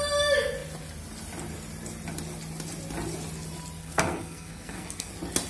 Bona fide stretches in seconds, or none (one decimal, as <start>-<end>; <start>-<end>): 0.0-3.8; 5.1-5.5